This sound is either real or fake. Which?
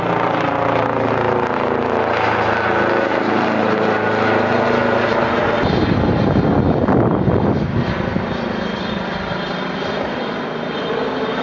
real